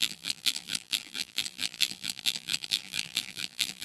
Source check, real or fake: fake